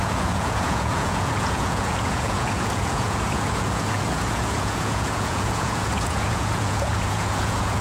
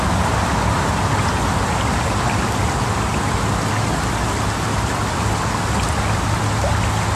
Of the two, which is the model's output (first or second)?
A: first